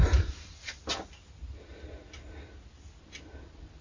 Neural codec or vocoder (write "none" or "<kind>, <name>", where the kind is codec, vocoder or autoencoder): none